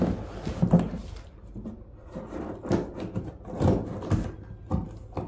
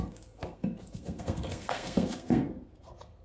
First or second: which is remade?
second